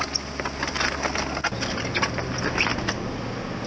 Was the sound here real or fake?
real